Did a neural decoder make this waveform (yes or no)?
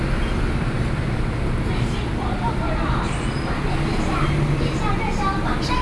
no